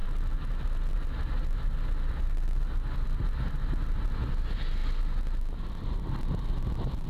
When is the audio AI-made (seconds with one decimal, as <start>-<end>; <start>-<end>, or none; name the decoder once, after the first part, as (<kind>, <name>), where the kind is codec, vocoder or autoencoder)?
none